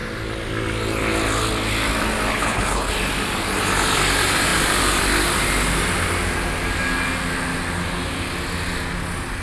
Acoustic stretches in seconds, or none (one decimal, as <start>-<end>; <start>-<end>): 0.0-2.3; 2.9-9.4

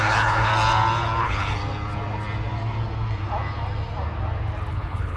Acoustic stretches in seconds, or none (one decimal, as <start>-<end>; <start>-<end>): 0.5-1.2; 1.6-4.7

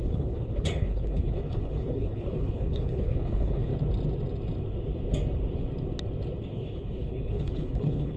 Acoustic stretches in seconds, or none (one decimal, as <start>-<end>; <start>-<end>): 3.7-6.5

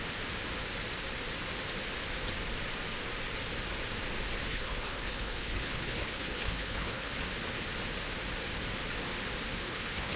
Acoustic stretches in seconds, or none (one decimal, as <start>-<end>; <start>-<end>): 0.0-4.5; 7.1-9.5